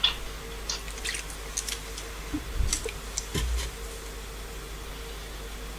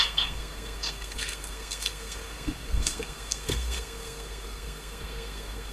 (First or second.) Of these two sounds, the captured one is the first